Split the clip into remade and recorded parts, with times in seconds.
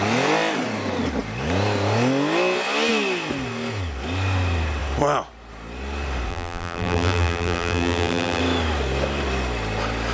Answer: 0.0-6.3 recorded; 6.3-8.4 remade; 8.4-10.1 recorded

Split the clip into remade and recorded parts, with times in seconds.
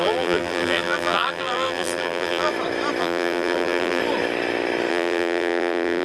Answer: 0.0-2.5 remade; 2.5-3.0 recorded; 3.0-4.0 remade; 4.0-4.9 recorded; 4.9-6.0 remade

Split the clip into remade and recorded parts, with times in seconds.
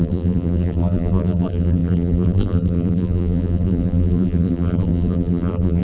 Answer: 0.0-5.8 remade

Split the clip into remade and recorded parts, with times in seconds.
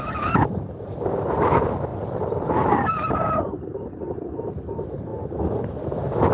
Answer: 0.0-5.1 remade; 5.1-5.8 recorded; 5.8-6.3 remade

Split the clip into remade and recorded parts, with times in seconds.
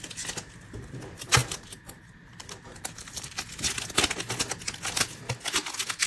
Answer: 0.0-1.4 recorded; 1.4-3.4 remade; 3.4-6.1 recorded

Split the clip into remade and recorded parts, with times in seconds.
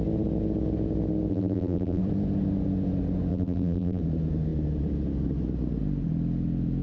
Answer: 0.0-1.3 recorded; 1.3-2.0 remade; 2.0-3.3 recorded; 3.3-4.0 remade; 4.0-6.8 recorded